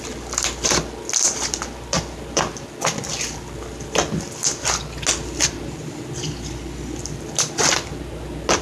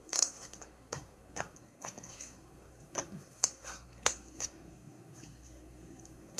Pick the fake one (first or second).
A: second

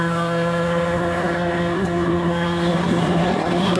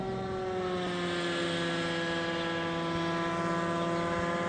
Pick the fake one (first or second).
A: first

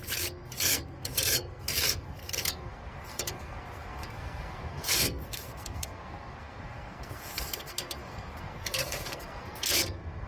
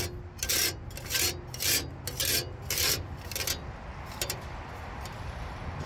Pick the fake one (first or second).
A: first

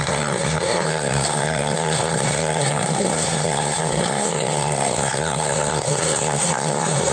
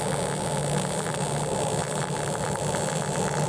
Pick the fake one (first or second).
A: first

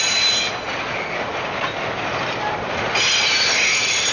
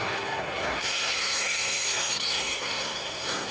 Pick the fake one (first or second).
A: second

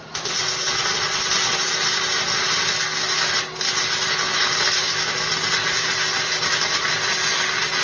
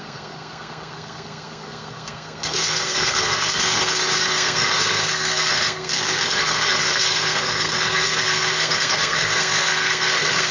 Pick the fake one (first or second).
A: second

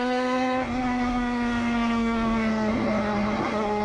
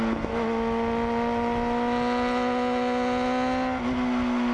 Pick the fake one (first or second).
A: first